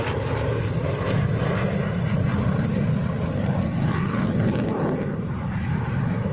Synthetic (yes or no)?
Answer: no